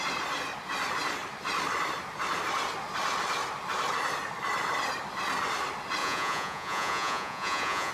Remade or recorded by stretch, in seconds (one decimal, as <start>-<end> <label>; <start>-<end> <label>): 0.0-6.0 recorded; 6.0-7.9 remade